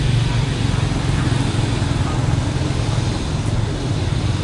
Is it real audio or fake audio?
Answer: real